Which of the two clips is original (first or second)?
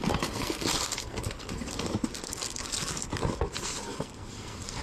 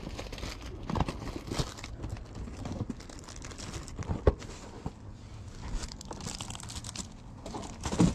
second